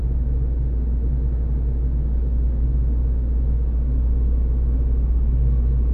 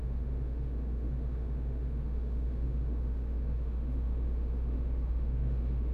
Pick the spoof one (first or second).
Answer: second